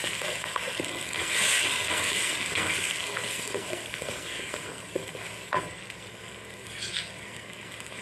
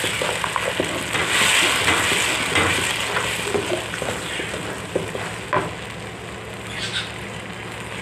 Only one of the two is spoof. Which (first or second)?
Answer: first